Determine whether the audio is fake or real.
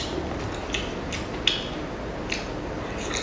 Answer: real